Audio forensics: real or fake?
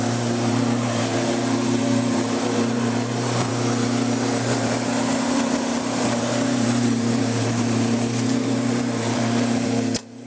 fake